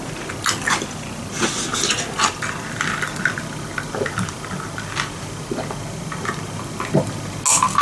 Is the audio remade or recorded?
recorded